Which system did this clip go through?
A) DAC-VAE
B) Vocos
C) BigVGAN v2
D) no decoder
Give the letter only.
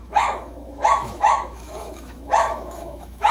A